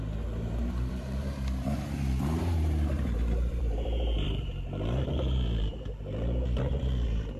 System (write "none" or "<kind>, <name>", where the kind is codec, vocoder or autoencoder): vocoder, BigVGAN v2